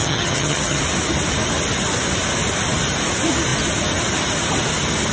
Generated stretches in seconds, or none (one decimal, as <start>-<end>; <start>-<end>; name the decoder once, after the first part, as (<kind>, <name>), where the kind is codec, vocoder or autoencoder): 0.0-0.8 (vocoder, HiFi-GAN)